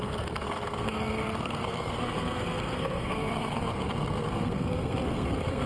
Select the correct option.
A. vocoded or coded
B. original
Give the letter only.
A